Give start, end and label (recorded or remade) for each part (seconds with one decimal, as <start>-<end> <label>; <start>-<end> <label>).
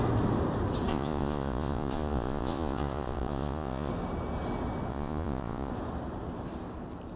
0.0-0.9 recorded; 0.9-3.9 remade; 3.9-4.9 recorded; 4.9-5.7 remade; 5.7-7.2 recorded